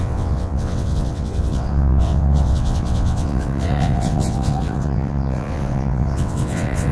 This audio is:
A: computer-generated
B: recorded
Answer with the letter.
A